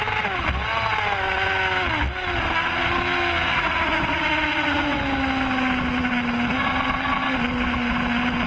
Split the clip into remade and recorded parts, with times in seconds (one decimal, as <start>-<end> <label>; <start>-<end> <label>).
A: 0.0-3.5 recorded; 3.5-5.0 remade; 5.0-8.5 recorded